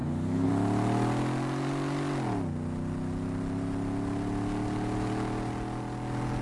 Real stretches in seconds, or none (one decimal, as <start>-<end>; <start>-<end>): 0.5-6.4